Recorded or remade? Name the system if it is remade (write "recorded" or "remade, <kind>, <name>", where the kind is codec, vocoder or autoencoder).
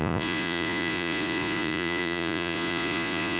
remade, vocoder, Vocos